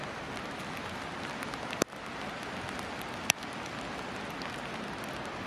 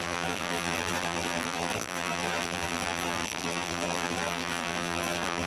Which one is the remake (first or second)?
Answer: second